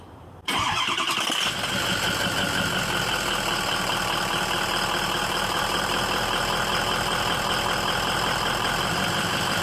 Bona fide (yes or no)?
yes